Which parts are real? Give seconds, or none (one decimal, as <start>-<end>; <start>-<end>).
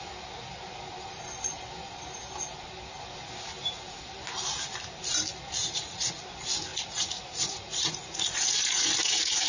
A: 0.0-5.6; 6.1-6.7